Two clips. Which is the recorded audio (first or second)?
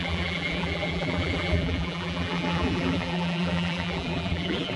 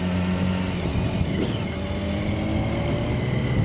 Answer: second